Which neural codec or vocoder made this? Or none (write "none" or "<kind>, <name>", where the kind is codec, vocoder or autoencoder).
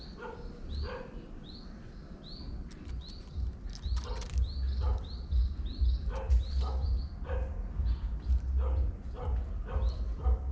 none